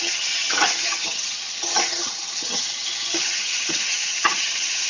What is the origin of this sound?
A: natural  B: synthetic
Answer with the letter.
B